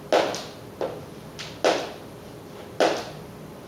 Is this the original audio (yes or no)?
yes